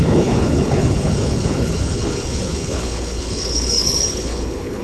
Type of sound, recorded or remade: remade